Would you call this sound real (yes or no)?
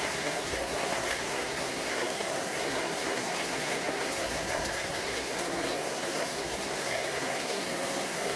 no